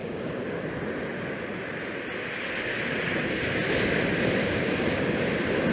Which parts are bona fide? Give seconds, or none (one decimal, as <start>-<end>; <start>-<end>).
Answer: 0.7-4.4; 5.2-5.7